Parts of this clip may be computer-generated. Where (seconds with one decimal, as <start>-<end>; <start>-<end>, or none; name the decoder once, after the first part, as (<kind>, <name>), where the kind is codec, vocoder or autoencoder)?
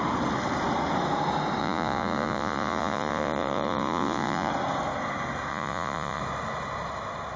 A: 1.6-4.5 (vocoder, Vocos); 5.5-6.2